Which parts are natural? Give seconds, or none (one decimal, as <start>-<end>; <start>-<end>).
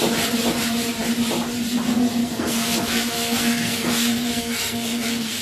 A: 0.0-2.2